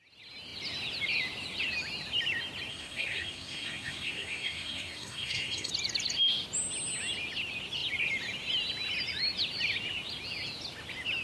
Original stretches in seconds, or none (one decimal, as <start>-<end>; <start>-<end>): 0.0-2.7; 5.7-11.2